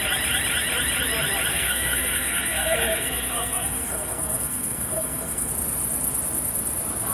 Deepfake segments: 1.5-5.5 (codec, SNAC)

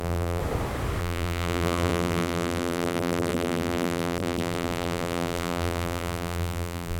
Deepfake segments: 0.0-0.4 (vocoder, BigVGAN v2); 1.0-7.0

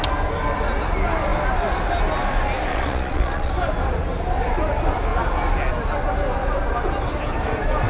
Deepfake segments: 2.7-3.5 (vocoder, Vocos)

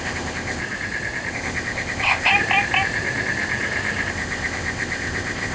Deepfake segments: 0.0-0.6 (codec, ZipCodec); 1.3-2.3; 4.1-5.5

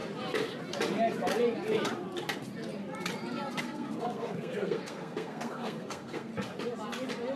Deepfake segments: 3.6-6.3 (codec, SNAC)

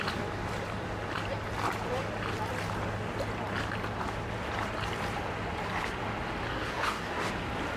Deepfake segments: 6.5-7.3 (codec, DAC)

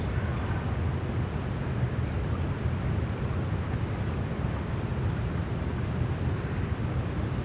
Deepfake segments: none